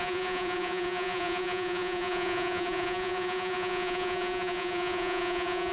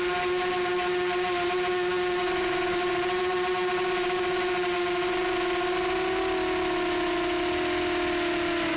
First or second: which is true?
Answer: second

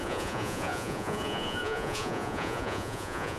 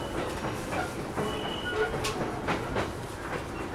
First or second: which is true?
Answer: second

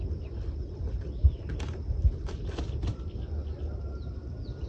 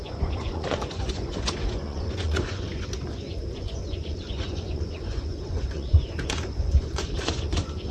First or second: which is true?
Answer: first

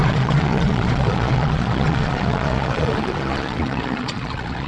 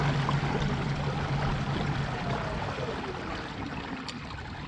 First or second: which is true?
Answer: second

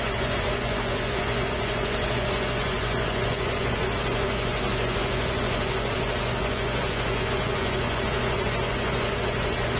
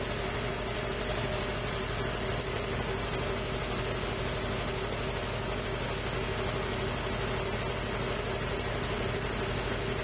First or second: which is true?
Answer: second